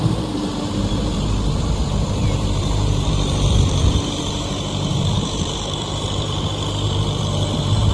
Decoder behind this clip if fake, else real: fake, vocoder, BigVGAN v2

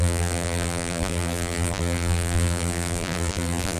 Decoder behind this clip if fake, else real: fake, vocoder, BigVGAN v2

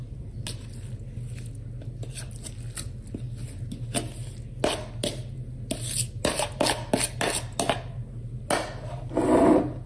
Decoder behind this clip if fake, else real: real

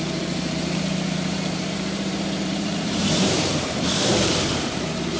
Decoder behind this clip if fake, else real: fake, vocoder, BigVGAN v2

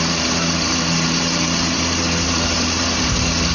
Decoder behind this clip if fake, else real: fake, vocoder, BigVGAN v2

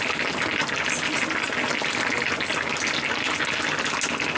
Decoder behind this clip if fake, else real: real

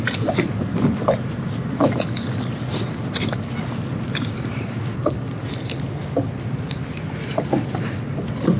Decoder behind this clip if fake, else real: real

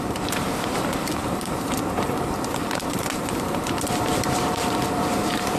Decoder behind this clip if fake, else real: fake, vocoder, BigVGAN v2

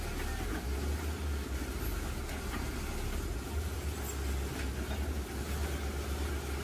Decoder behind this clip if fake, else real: real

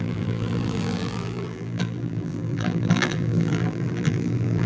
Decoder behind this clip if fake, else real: fake, vocoder, BigVGAN v2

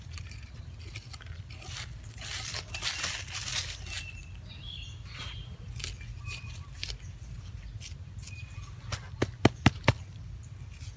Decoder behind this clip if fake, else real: real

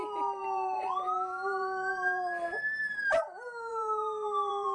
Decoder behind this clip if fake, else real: fake, vocoder, BigVGAN v2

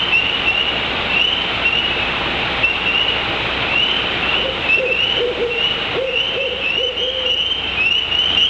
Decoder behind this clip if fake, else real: fake, vocoder, BigVGAN v2